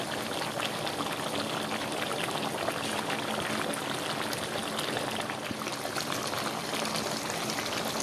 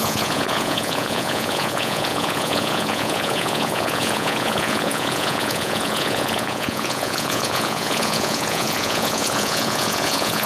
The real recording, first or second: first